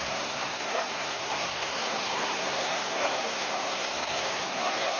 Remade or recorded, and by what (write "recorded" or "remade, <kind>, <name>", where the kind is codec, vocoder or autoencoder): remade, codec, SNAC